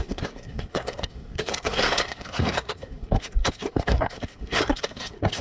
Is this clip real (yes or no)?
no